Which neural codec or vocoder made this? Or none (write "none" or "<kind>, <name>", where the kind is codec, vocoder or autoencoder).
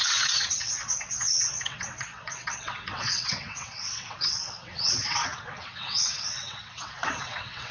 vocoder, WaveNeXt